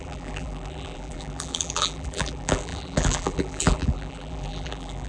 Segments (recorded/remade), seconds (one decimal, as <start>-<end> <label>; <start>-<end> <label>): 0.0-5.1 remade

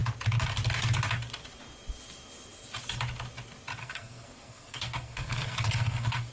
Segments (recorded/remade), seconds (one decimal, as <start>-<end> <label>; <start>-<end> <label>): 0.0-3.8 recorded; 3.8-6.3 remade

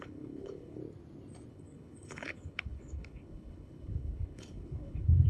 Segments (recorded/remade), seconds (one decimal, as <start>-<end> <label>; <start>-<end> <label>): 0.0-0.8 remade; 0.8-1.5 recorded; 1.5-5.3 remade